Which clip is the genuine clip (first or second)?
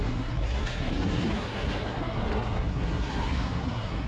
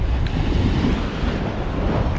second